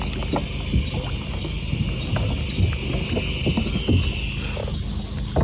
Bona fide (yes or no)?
yes